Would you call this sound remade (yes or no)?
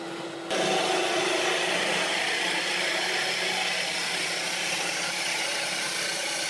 no